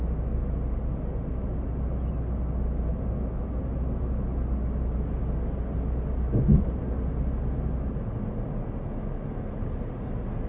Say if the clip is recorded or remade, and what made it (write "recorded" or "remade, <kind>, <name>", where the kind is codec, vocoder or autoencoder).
recorded